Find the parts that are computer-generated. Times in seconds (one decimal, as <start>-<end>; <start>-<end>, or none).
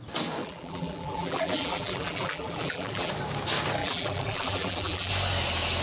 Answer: 0.4-3.1; 3.8-5.1